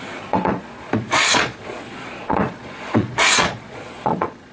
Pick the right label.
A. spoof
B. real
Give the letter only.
A